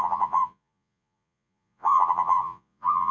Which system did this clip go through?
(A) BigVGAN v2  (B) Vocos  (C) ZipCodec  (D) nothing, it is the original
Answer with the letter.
B